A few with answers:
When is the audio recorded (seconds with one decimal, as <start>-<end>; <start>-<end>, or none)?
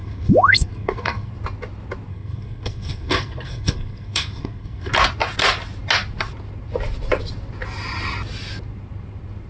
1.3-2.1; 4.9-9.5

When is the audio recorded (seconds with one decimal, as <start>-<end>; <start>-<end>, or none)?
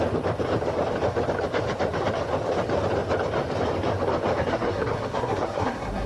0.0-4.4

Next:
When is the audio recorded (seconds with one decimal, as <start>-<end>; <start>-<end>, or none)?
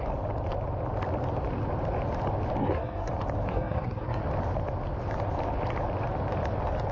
0.0-2.6; 3.1-3.5; 4.2-6.9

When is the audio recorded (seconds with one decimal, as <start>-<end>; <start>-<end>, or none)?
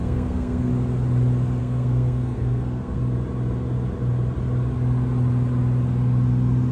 0.7-1.6; 3.0-6.7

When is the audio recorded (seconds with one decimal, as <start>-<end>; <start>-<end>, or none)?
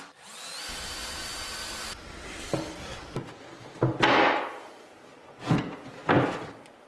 0.0-6.9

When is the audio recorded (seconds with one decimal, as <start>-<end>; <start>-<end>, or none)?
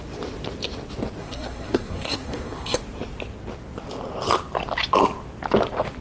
0.0-1.2; 2.8-6.0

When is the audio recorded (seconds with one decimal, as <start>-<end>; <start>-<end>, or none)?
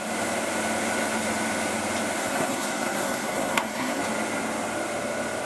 0.0-2.2; 4.0-5.5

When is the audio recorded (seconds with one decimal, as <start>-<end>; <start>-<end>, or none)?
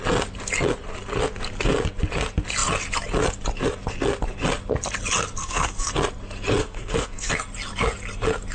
0.0-5.4; 5.9-6.6; 7.3-8.5